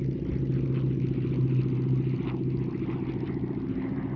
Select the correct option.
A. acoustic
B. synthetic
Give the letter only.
A